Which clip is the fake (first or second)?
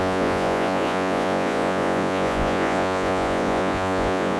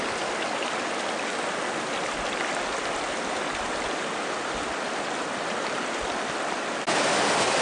first